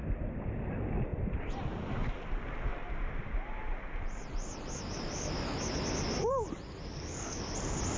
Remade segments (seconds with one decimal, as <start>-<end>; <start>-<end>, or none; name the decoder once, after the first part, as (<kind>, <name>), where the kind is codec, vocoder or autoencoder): none